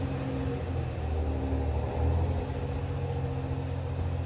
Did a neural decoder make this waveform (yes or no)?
no